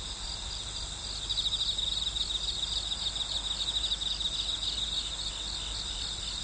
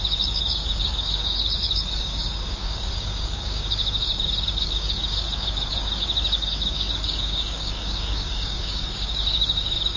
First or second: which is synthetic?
second